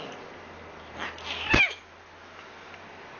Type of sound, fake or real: real